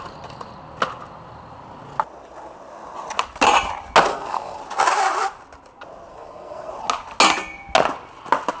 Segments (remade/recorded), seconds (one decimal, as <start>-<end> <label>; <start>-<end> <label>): 0.0-4.1 recorded; 4.1-4.6 remade; 4.6-6.1 recorded; 6.1-6.7 remade; 6.7-8.6 recorded